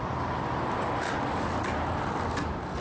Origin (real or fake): real